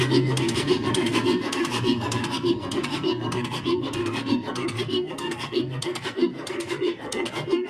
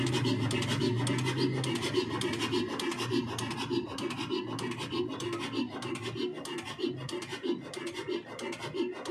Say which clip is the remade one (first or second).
first